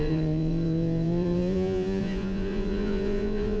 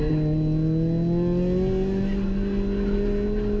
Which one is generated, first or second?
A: first